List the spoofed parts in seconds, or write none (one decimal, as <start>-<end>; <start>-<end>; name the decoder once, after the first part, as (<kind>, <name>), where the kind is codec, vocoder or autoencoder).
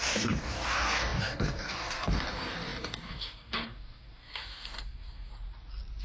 0.0-5.3 (codec, DAC)